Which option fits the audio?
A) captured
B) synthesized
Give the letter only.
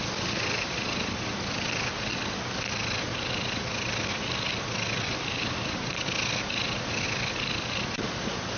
A